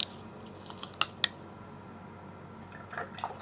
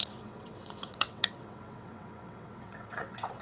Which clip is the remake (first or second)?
second